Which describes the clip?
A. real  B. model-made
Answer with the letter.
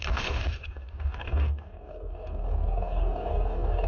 B